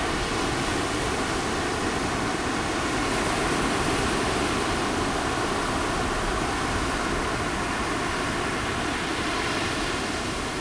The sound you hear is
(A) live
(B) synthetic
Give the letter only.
A